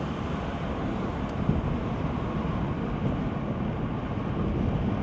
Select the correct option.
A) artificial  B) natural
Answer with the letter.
B